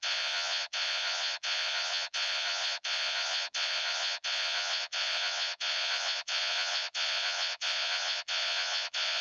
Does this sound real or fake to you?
fake